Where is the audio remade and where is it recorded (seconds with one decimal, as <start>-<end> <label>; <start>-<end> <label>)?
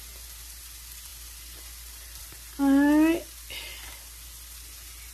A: 0.0-5.1 recorded